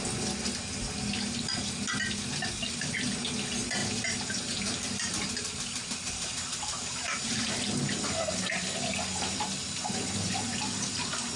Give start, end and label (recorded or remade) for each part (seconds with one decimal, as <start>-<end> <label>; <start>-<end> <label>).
0.0-3.8 recorded; 3.8-7.5 remade; 7.5-11.4 recorded